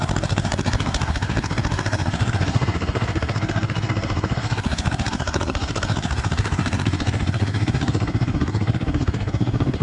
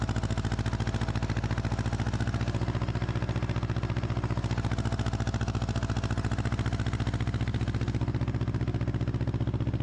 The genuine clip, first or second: second